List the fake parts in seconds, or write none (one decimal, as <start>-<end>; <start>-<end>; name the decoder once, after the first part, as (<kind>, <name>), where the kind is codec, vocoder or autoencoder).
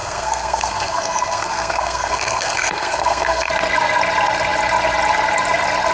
0.0-3.5 (codec, SNAC)